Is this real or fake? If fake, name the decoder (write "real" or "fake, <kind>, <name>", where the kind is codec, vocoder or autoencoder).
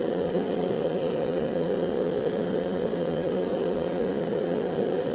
fake, vocoder, Vocos